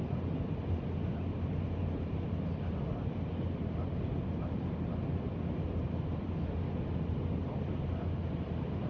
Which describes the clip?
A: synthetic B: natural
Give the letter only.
B